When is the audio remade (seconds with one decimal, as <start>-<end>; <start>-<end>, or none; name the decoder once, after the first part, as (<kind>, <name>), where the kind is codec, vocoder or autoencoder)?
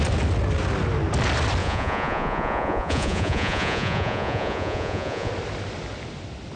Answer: 1.6-5.3 (vocoder, Vocos)